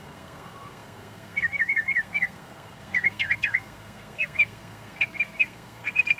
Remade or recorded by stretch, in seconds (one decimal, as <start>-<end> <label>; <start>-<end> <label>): 0.0-6.2 remade